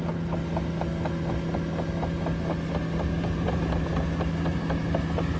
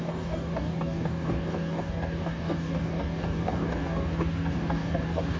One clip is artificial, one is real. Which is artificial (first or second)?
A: second